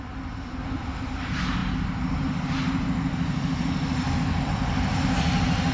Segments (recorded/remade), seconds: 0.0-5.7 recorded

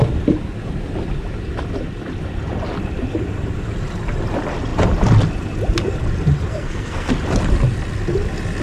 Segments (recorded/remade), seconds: 0.0-6.5 recorded; 6.5-7.1 remade; 7.1-8.6 recorded

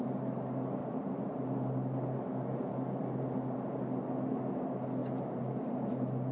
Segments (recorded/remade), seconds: 0.0-6.3 recorded

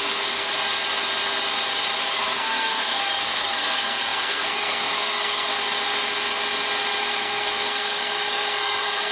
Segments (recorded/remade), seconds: 0.0-0.5 remade; 0.5-2.1 recorded; 2.1-5.5 remade; 5.5-7.0 recorded; 7.0-9.1 remade

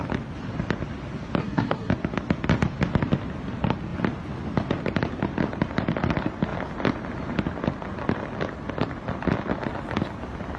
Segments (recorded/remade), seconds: 0.0-1.4 recorded; 1.4-1.9 remade; 1.9-10.6 recorded